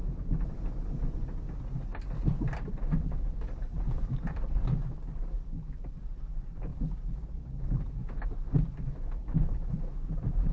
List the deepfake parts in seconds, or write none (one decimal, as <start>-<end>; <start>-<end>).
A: 1.9-4.5; 6.7-7.9